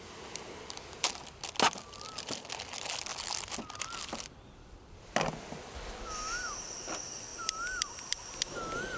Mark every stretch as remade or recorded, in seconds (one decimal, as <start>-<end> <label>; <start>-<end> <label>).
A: 0.0-9.0 recorded